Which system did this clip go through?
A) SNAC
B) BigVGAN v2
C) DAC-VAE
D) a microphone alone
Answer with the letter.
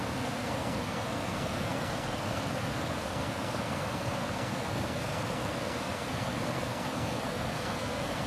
A